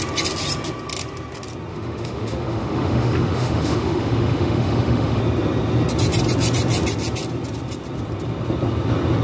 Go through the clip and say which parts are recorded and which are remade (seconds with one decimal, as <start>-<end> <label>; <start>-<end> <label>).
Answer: 0.0-1.7 recorded; 1.7-5.2 remade; 5.2-9.2 recorded

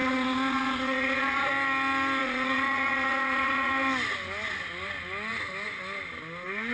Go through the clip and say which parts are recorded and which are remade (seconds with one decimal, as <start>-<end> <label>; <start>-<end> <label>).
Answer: 0.0-1.5 remade; 1.5-2.2 recorded; 2.2-3.7 remade; 3.7-6.7 recorded

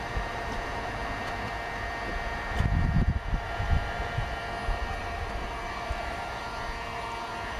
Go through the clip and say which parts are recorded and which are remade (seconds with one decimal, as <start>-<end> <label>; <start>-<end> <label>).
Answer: 0.0-1.0 remade; 1.0-3.1 recorded; 3.1-4.4 remade; 4.4-5.0 recorded; 5.0-6.4 remade; 6.4-7.6 recorded

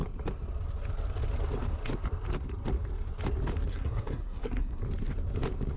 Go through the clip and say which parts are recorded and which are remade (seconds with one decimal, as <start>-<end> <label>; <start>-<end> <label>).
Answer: 0.0-3.7 recorded; 3.7-4.8 remade; 4.8-5.8 recorded

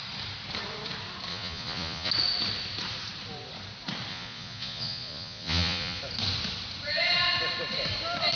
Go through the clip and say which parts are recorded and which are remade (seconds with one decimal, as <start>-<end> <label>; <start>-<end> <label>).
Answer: 0.0-1.3 recorded; 1.3-2.1 remade; 2.1-4.1 recorded; 4.1-6.0 remade; 6.0-8.4 recorded

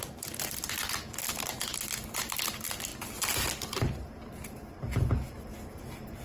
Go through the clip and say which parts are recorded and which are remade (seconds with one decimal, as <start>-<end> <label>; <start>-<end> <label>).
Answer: 0.0-6.2 recorded

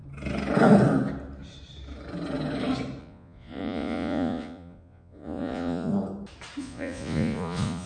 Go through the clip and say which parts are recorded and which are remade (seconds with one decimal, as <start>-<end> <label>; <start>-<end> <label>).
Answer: 0.0-3.0 recorded; 3.0-5.9 remade; 5.9-6.6 recorded; 6.6-7.9 remade